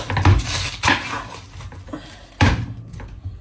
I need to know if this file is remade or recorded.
recorded